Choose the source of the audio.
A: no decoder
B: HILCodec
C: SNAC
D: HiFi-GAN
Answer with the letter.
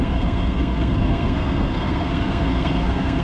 C